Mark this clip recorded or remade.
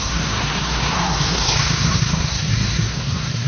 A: remade